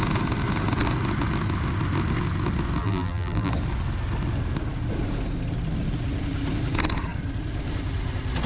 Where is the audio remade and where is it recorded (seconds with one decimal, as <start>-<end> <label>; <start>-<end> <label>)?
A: 0.0-2.8 recorded; 2.8-3.5 remade; 3.5-8.5 recorded